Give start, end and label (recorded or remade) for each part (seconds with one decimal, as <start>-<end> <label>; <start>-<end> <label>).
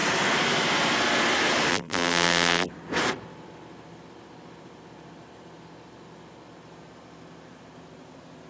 0.0-1.7 recorded; 1.7-2.7 remade; 2.7-8.5 recorded